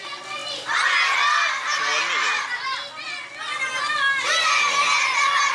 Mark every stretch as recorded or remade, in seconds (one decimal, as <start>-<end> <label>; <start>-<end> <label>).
0.0-5.5 recorded